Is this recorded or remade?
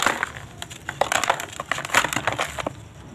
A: recorded